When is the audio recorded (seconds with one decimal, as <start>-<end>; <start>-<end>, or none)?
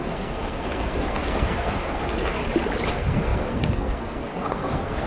2.4-2.9